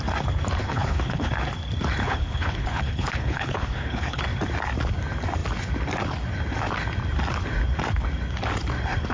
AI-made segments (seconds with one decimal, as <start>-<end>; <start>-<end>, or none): 0.6-1.3; 2.0-4.2